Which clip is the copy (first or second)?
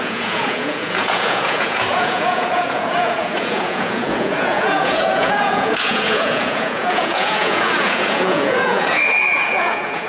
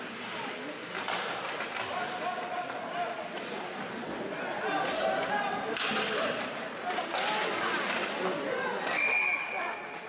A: first